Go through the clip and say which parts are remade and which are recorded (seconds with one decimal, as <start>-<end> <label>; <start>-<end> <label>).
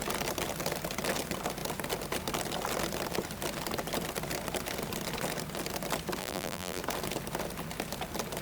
0.0-6.2 recorded; 6.2-6.8 remade; 6.8-8.4 recorded